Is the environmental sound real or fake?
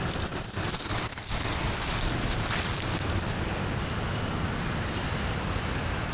fake